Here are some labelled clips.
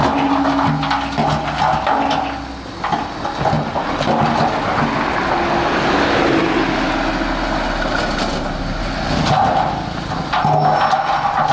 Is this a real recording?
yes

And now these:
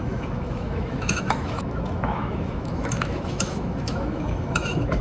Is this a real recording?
no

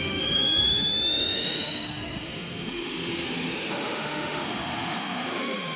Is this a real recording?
no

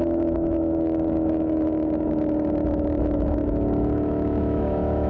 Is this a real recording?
no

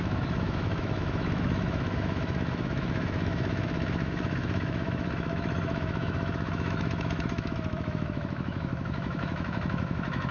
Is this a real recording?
no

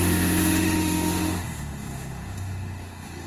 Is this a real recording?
no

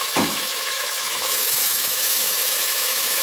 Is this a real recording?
no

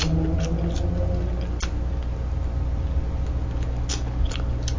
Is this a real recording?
yes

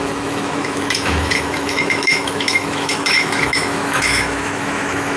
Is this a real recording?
no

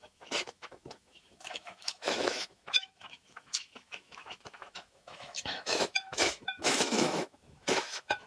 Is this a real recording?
no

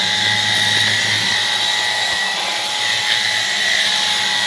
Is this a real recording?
yes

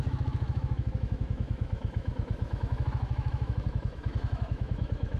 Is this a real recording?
no